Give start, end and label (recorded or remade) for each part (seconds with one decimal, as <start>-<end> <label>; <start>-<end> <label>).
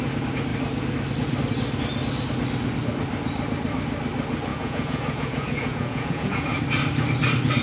0.0-4.5 recorded; 4.5-6.6 remade; 6.6-7.6 recorded